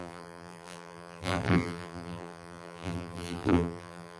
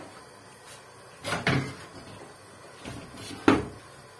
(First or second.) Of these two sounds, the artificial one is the first